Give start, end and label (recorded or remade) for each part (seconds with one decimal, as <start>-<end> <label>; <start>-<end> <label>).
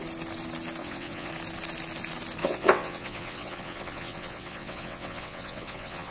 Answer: 0.0-0.8 recorded; 0.8-1.3 remade; 1.3-2.4 recorded; 2.4-6.1 remade